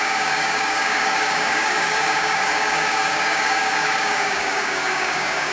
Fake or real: fake